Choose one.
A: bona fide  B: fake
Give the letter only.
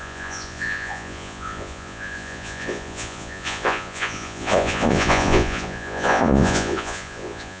B